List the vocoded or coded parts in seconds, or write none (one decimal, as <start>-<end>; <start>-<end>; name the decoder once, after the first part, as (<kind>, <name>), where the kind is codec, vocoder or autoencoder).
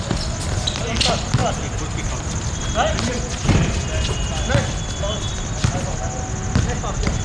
none